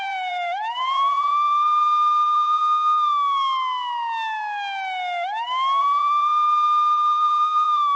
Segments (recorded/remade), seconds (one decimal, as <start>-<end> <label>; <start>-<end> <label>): 0.0-2.6 remade; 2.6-5.8 recorded; 5.8-8.0 remade

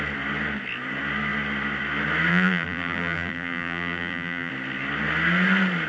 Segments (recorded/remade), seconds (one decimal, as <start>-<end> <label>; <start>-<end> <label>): 0.0-2.3 recorded; 2.3-4.5 remade; 4.5-5.9 recorded

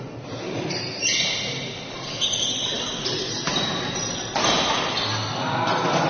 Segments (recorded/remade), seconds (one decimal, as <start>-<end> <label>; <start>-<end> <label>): 0.0-6.1 recorded

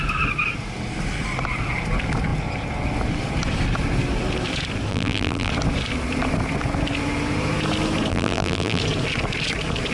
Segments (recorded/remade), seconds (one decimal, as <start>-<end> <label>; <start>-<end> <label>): 0.0-4.9 recorded; 4.9-5.5 remade; 5.5-8.1 recorded; 8.1-8.8 remade; 8.8-9.9 recorded